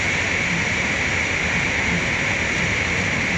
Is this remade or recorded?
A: recorded